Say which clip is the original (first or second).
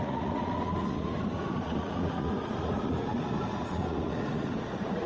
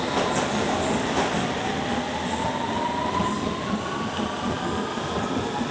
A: second